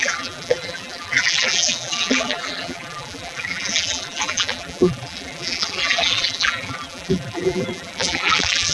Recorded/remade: remade